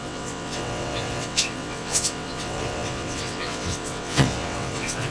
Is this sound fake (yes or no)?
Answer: yes